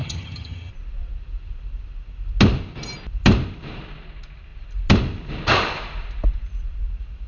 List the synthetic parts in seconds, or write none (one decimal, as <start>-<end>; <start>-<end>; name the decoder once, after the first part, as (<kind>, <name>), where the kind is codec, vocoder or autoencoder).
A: 0.0-0.7 (vocoder, HiFi-GAN)